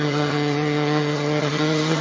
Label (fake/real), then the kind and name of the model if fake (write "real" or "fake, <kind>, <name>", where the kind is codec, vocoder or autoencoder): fake, vocoder, HiFi-GAN